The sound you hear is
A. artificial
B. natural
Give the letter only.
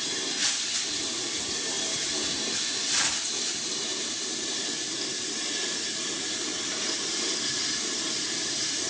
A